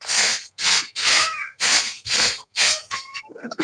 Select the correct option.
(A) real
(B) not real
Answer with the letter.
B